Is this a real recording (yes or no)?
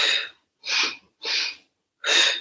yes